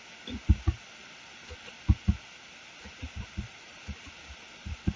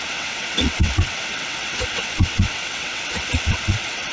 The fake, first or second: second